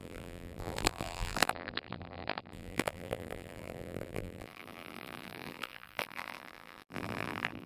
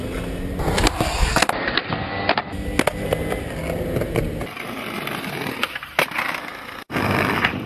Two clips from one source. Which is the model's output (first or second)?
first